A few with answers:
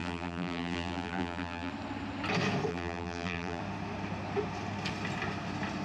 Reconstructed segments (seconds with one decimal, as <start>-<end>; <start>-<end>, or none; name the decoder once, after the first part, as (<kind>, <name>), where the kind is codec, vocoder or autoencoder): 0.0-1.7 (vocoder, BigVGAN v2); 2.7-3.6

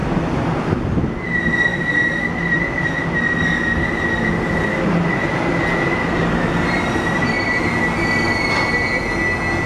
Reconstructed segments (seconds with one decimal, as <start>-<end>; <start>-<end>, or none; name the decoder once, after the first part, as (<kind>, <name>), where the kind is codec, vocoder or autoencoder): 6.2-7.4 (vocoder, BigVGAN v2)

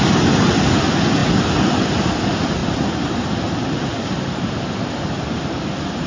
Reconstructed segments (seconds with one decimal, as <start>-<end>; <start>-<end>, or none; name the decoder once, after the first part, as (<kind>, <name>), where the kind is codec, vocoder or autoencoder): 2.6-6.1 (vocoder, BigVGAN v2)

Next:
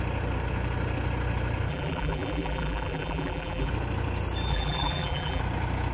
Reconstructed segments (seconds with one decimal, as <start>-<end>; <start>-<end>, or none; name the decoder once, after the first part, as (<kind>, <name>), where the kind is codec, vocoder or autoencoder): 1.7-3.7 (vocoder, BigVGAN v2); 4.5-5.4

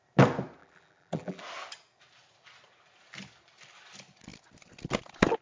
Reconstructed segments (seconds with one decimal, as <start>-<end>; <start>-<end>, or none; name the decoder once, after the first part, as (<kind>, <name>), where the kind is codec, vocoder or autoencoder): 0.6-1.4 (vocoder, BigVGAN v2)

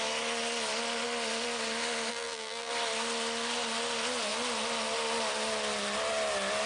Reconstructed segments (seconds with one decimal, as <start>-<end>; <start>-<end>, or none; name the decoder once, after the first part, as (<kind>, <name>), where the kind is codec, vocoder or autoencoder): 2.1-2.7 (vocoder, BigVGAN v2)